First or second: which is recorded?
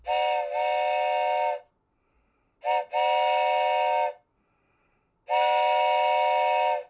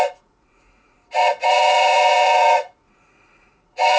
first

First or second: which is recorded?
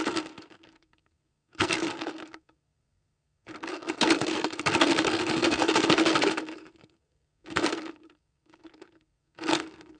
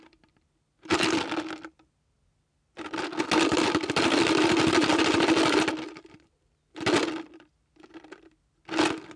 second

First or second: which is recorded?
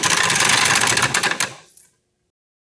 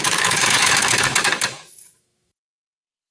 first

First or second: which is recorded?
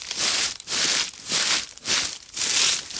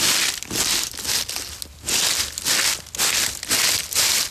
second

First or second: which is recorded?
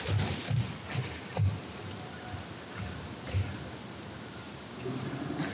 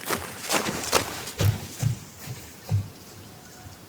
first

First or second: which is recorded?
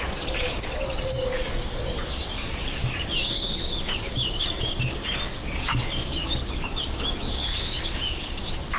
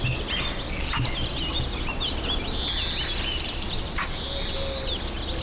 second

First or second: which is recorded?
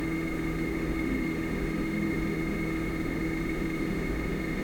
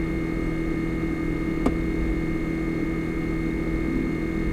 second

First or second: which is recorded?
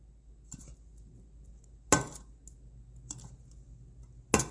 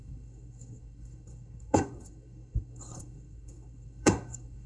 first